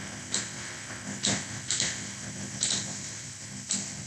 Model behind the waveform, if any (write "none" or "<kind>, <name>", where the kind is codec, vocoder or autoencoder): none